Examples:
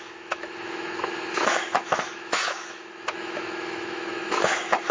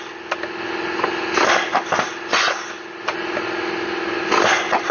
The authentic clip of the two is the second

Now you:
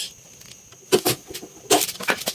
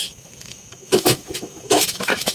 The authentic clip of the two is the first